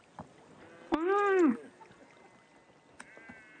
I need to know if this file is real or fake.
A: real